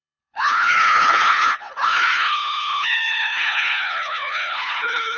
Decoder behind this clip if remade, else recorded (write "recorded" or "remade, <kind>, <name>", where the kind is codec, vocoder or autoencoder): remade, codec, HILCodec